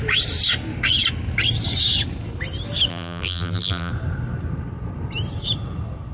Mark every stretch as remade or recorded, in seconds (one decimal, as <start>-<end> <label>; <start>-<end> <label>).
0.0-2.9 recorded; 2.9-3.9 remade; 3.9-6.1 recorded